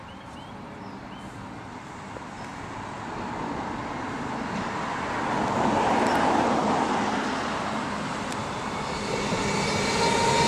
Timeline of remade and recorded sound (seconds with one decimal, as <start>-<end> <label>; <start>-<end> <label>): 0.0-10.5 recorded